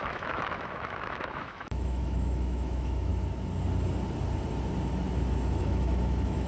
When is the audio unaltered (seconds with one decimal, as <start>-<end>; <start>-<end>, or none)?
3.1-5.6